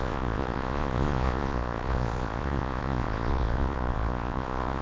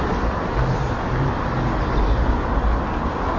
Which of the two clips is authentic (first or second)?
second